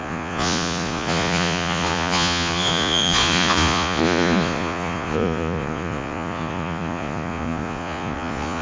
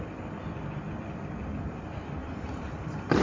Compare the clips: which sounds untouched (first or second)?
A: second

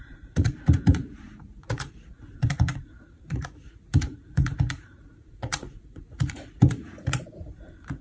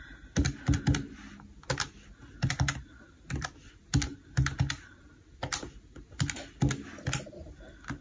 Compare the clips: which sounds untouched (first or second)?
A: second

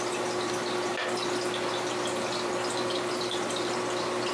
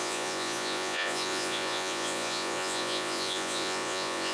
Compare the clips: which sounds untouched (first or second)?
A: first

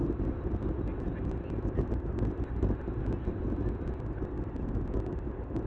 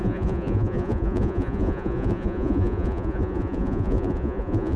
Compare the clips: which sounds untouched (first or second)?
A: first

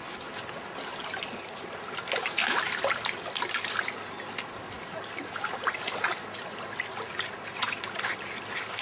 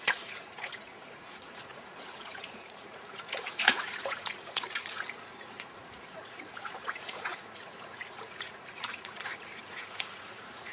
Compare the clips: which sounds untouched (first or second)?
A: first